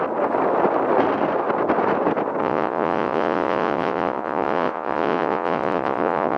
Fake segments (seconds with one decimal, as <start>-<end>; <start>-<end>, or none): 2.4-6.4